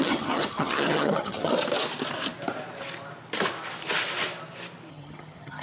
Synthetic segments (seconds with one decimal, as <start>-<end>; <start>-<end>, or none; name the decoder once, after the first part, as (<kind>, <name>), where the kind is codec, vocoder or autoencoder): 0.0-1.5 (vocoder, HiFi-GAN); 4.9-5.6